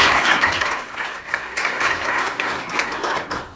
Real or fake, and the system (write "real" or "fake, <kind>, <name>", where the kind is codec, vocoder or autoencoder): fake, codec, SNAC